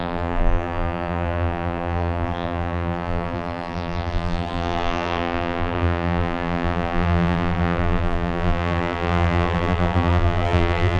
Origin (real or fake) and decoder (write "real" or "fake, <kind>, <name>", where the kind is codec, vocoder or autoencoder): fake, vocoder, BigVGAN v2